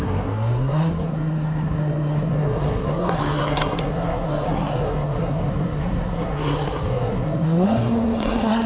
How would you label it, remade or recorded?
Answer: remade